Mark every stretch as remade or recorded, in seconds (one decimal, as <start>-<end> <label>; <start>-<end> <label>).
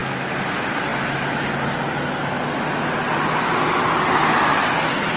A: 0.0-5.2 recorded